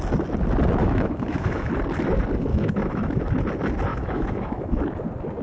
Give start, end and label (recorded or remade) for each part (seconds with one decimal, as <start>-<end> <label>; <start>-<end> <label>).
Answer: 0.0-0.8 recorded; 0.8-1.7 remade; 1.7-2.5 recorded; 2.5-3.2 remade; 3.2-3.9 recorded; 3.9-4.8 remade; 4.8-5.4 recorded